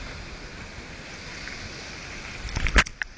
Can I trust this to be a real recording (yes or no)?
yes